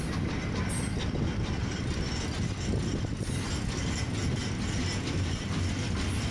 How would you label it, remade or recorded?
recorded